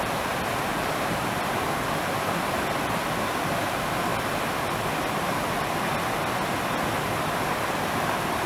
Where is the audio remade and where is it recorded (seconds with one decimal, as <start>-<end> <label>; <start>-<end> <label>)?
0.0-0.7 recorded; 0.7-2.0 remade; 2.0-8.5 recorded